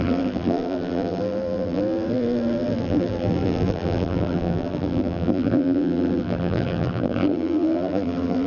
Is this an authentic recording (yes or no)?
no